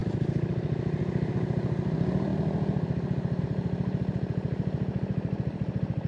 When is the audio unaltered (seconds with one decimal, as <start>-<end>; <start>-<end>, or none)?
0.0-6.1